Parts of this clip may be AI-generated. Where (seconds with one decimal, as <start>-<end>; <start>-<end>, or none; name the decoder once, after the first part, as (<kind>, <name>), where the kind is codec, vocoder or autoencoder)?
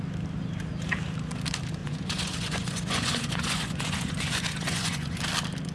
1.8-5.2 (vocoder, Vocos)